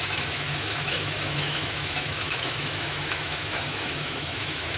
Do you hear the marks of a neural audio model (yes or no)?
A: yes